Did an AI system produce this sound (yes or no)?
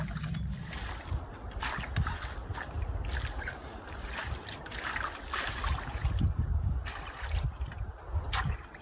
no